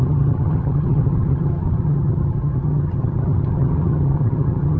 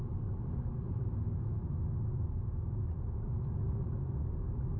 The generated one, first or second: first